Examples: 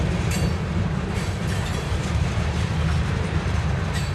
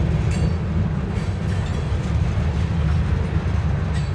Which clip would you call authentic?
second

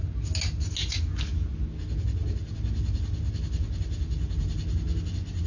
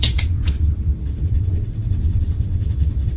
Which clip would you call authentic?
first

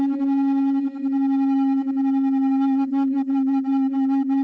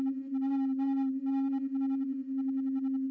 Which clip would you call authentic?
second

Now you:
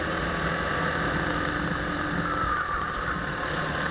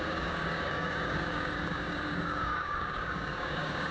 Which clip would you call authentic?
first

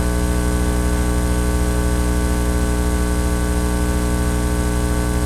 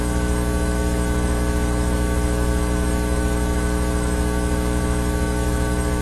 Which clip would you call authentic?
first